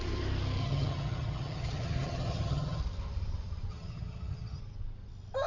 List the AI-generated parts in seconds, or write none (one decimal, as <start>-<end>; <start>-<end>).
0.6-2.8; 3.7-4.6